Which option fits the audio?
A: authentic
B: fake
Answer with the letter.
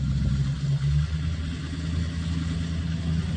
A